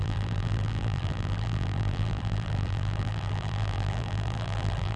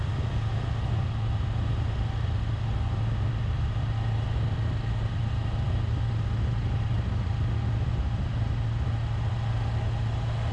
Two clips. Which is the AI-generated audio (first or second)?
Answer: first